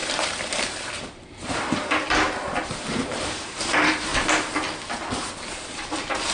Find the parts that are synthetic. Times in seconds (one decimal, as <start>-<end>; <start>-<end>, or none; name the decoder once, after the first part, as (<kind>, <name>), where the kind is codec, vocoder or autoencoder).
0.0-4.1 (vocoder, BigVGAN v2); 5.4-6.3